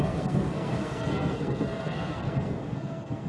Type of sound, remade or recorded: remade